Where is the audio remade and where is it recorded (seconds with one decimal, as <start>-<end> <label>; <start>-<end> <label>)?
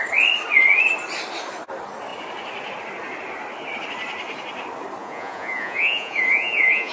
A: 0.0-5.0 recorded; 5.0-6.9 remade